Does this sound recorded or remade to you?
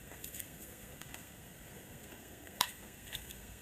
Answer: remade